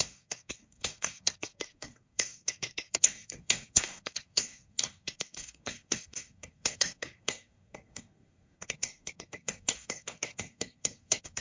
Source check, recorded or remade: remade